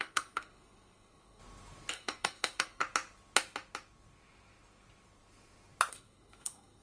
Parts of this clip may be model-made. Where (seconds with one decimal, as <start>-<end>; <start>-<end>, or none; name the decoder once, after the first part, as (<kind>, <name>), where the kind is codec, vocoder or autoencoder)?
0.0-1.4 (codec, SNAC); 1.9-2.8; 5.9-6.8